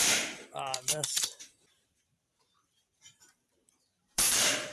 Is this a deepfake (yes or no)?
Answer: yes